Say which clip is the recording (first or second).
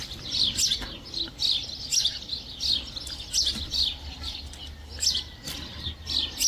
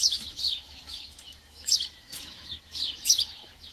first